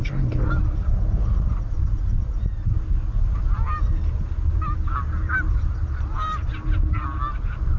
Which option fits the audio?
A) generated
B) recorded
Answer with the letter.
B